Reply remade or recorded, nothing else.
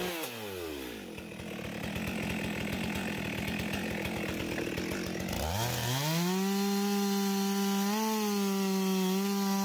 recorded